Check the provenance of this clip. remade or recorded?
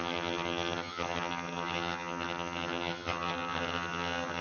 remade